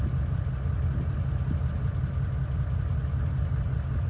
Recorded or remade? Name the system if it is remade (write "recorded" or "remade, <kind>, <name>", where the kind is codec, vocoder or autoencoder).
recorded